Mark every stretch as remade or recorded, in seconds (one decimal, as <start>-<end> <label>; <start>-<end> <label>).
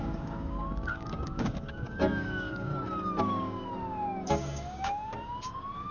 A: 0.0-2.7 remade; 2.7-3.2 recorded; 3.2-5.9 remade